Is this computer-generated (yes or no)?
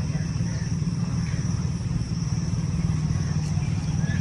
no